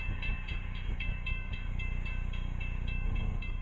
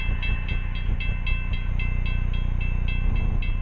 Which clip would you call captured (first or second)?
second